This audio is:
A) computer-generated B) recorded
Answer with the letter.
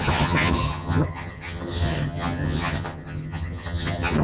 A